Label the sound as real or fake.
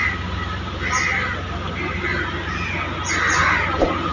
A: real